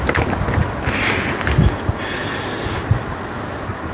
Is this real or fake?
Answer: real